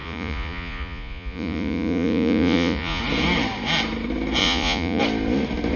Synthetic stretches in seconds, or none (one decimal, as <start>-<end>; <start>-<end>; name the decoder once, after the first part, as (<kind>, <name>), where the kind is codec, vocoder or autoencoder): 0.0-3.0 (vocoder, Vocos); 4.4-5.0